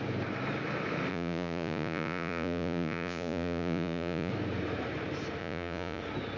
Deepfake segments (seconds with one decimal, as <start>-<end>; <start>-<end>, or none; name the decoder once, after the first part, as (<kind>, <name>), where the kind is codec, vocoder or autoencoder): 1.1-4.3 (vocoder, Vocos); 5.4-6.0